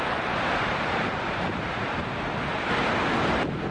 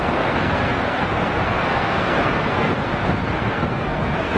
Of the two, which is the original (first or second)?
first